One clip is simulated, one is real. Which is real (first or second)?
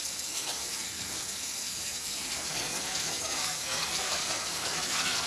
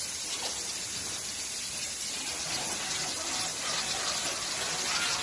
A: second